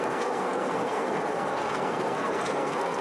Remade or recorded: remade